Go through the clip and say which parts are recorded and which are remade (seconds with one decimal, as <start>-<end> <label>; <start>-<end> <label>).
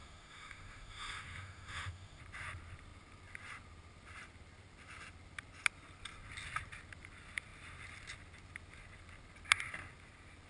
0.0-2.2 remade; 2.2-10.5 recorded